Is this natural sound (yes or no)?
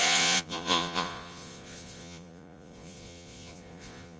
no